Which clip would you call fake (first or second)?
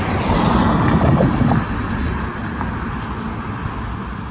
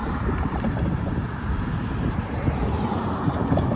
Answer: second